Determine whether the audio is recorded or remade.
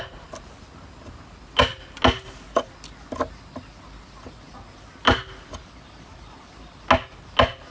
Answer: recorded